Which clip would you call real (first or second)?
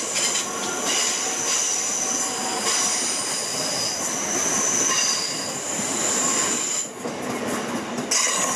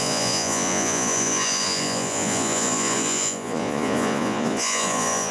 first